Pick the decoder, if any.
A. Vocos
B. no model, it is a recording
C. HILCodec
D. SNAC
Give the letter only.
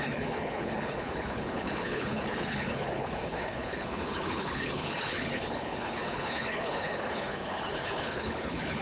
C